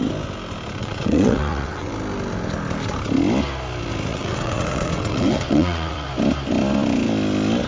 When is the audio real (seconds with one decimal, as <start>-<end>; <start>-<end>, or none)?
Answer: 0.0-0.8; 1.9-4.1; 6.1-7.7